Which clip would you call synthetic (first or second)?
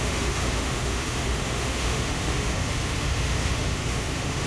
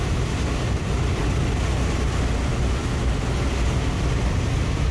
first